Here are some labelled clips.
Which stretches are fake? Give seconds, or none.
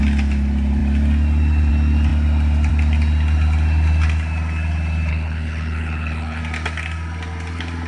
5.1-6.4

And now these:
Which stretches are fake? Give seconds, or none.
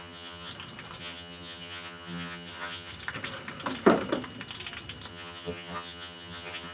0.0-0.5; 1.0-2.9; 5.1-6.7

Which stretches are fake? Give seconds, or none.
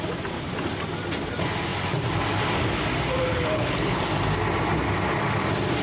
3.3-4.0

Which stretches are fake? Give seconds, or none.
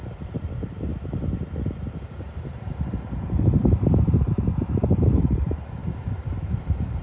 0.0-0.9; 5.1-7.0